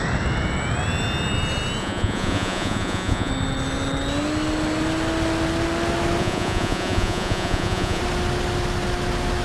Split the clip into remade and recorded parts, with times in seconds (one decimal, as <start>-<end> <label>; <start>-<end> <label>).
0.0-1.8 recorded; 1.8-3.3 remade; 3.3-6.2 recorded; 6.2-8.0 remade; 8.0-9.4 recorded